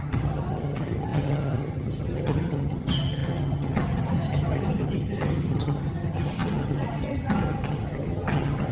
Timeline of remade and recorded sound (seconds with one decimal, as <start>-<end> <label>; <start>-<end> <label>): 0.0-8.7 remade